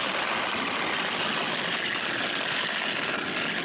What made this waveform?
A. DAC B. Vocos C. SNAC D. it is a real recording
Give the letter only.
D